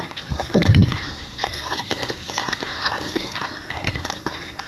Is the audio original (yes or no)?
no